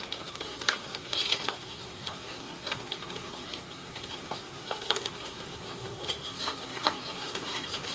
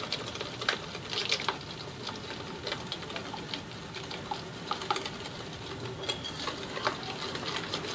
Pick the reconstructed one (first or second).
first